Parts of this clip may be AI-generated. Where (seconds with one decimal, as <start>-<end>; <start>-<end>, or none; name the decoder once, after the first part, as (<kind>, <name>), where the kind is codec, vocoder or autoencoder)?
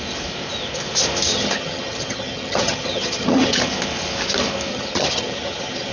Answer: 1.3-3.6 (vocoder, HiFi-GAN); 4.7-5.9